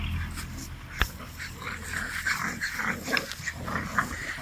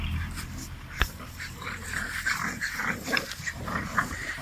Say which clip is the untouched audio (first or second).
first